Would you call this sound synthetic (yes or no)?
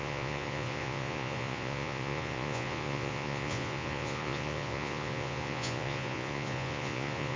yes